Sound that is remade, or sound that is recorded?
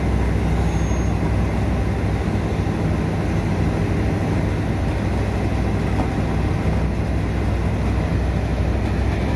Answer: recorded